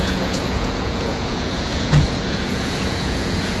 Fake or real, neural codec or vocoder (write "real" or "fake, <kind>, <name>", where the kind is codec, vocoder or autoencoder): fake, vocoder, Vocos